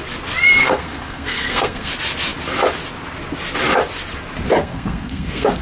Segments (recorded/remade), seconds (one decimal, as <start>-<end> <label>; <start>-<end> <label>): 0.0-0.6 recorded; 0.6-1.9 remade; 1.9-4.6 recorded; 4.6-5.6 remade